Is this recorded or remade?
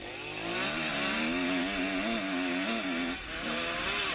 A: recorded